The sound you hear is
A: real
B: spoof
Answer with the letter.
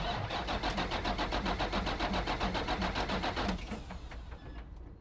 A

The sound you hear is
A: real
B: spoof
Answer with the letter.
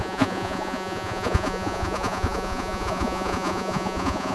B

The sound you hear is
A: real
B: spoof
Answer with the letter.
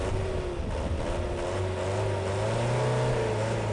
A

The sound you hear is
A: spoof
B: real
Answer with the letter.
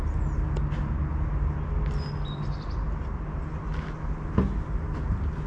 B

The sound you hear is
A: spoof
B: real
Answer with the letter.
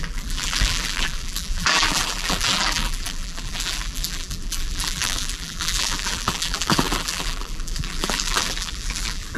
A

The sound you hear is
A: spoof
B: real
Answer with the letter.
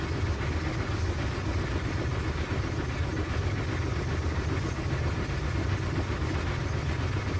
B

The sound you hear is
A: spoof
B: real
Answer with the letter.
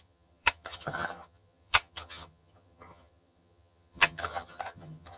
A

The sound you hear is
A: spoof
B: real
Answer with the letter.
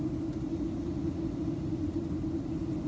B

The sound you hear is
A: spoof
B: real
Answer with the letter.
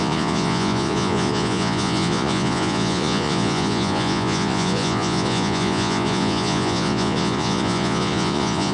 A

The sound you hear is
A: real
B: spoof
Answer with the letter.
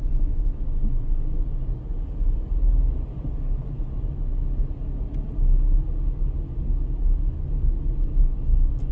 A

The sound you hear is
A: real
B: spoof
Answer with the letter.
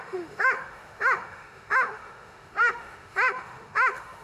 B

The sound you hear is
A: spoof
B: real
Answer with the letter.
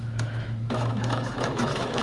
A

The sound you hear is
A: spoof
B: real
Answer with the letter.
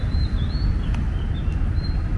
B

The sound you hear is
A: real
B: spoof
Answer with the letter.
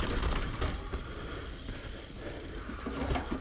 A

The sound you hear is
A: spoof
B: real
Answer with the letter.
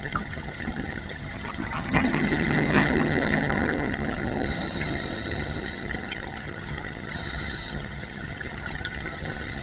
A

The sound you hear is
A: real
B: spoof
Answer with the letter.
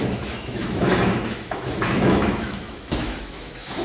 B